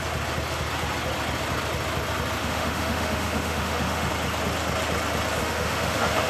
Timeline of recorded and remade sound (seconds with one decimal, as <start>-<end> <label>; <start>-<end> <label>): 0.0-2.4 recorded; 2.4-4.1 remade; 4.1-5.4 recorded; 5.4-6.3 remade